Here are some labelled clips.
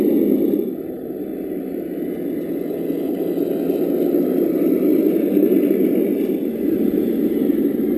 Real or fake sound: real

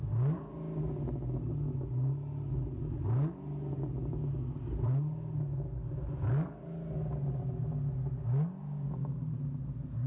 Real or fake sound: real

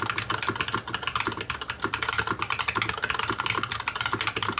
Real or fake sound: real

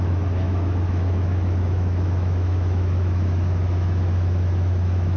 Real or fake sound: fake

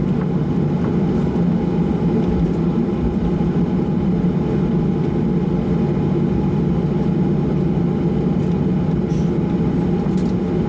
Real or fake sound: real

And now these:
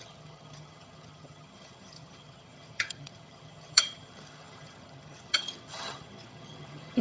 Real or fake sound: fake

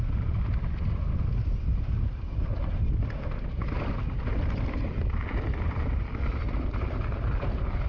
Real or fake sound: real